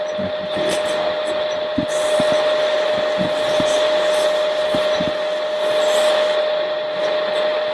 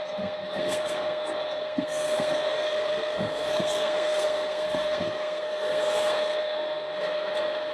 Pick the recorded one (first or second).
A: first